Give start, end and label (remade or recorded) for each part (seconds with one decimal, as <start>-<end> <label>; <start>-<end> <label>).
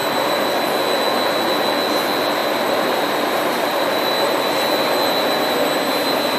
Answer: 0.0-0.8 remade; 0.8-2.4 recorded; 2.4-4.4 remade; 4.4-6.4 recorded